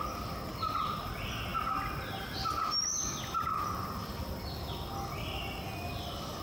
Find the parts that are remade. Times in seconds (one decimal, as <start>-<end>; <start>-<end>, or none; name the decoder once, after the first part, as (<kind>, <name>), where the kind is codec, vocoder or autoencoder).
none

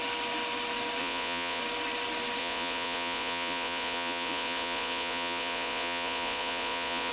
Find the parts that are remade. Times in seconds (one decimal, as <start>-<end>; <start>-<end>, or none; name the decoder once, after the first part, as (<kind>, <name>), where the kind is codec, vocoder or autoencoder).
1.0-1.6 (vocoder, Vocos); 2.4-7.1

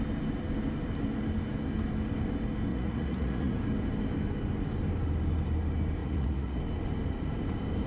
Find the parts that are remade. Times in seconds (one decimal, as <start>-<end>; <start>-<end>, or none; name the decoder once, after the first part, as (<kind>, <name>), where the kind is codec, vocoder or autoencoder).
2.7-3.6 (vocoder, Vocos); 6.0-6.6